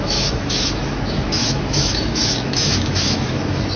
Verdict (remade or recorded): remade